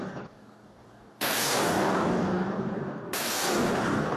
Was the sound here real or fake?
fake